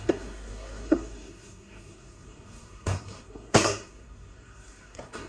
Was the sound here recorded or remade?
remade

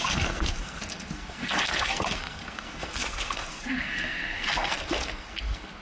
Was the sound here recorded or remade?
remade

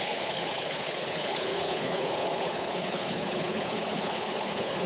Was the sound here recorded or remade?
remade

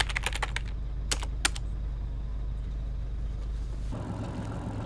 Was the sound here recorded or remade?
recorded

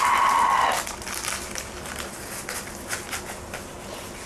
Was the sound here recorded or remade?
recorded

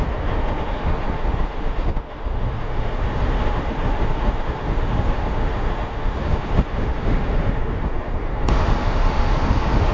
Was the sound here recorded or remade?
remade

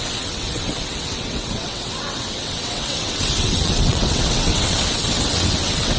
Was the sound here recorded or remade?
remade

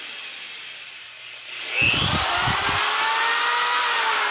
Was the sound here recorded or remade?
recorded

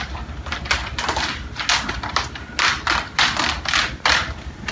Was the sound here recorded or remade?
recorded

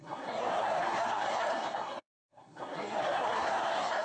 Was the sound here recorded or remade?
remade